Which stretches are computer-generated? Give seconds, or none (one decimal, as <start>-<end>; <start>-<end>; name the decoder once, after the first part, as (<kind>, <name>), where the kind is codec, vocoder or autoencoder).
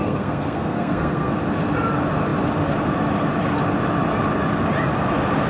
0.0-1.4 (codec, SNAC)